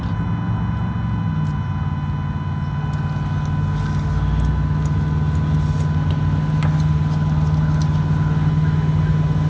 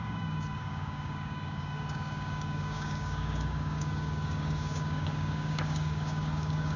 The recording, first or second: first